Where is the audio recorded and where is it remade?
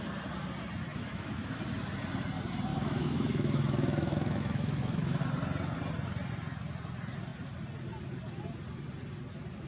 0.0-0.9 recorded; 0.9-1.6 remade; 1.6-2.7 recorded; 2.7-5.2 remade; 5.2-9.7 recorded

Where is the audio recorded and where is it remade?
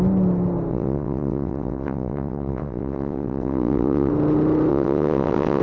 0.0-0.7 recorded; 0.7-4.1 remade; 4.1-4.7 recorded; 4.7-5.6 remade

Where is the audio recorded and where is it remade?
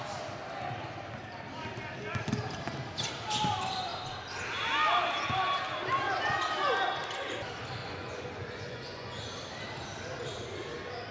0.0-7.8 recorded; 7.8-9.2 remade; 9.2-11.1 recorded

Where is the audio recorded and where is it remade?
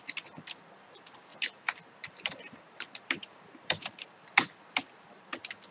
0.0-1.3 recorded; 1.3-4.3 remade; 4.3-5.7 recorded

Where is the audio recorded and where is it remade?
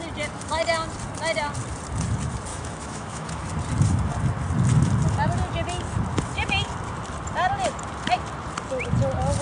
0.0-2.5 recorded; 2.5-3.4 remade; 3.4-9.4 recorded